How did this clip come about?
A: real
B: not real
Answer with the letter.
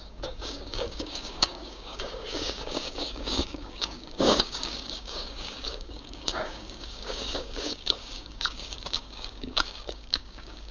B